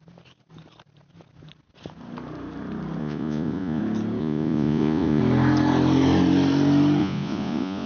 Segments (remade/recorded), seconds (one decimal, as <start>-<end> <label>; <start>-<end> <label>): 0.0-3.0 recorded; 3.0-3.8 remade; 3.8-4.2 recorded; 4.2-5.2 remade; 5.2-7.0 recorded; 7.0-7.9 remade